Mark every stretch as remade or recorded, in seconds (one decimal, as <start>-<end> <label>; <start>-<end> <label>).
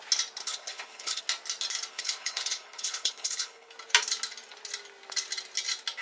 0.0-0.4 recorded; 0.4-1.2 remade; 1.2-1.9 recorded; 1.9-3.7 remade; 3.7-6.0 recorded